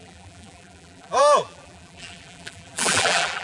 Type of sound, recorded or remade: remade